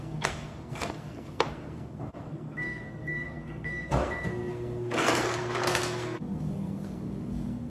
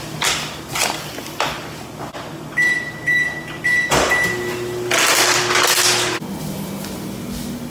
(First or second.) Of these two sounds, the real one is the second